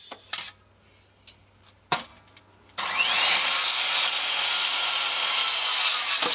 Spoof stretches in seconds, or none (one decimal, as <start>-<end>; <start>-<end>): none